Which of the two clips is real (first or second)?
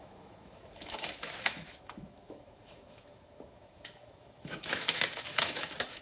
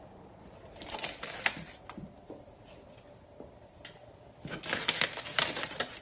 second